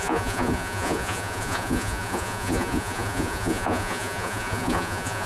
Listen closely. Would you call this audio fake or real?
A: fake